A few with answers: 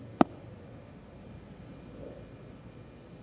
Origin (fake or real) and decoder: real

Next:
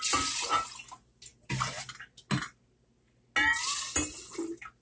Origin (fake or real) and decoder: real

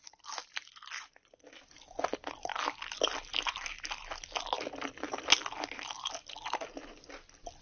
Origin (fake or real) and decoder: real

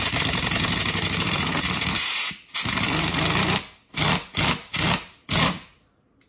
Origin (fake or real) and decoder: real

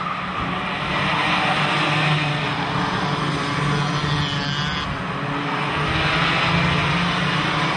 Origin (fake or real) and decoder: real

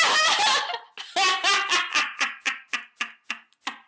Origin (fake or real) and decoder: real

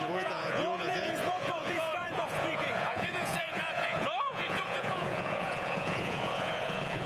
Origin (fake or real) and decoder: fake, vocoder, Vocos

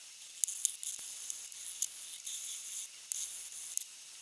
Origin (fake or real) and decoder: real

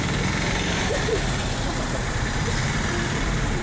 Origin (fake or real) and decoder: fake, vocoder, BigVGAN v2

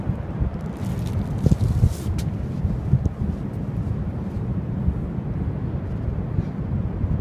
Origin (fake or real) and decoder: real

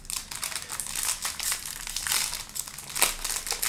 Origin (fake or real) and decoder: real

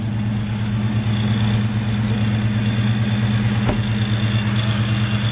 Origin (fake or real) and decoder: real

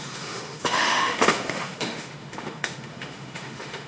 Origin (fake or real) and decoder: fake, autoencoder, DAC-VAE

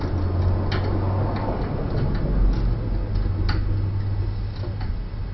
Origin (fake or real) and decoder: real